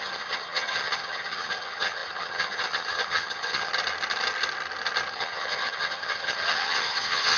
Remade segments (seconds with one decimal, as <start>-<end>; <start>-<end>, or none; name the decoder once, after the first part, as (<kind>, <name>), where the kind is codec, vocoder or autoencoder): 0.0-3.7 (vocoder, HiFi-GAN); 5.1-7.4